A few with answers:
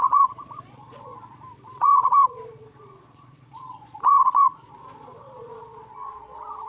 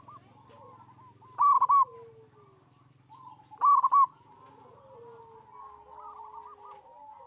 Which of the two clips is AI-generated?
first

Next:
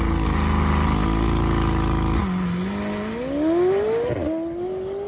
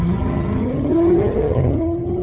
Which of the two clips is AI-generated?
second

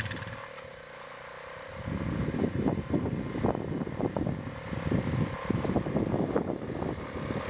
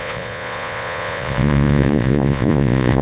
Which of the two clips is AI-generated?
second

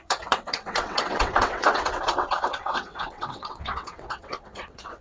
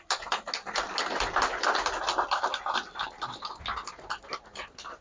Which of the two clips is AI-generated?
first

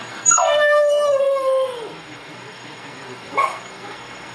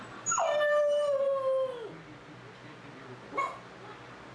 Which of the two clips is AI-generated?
first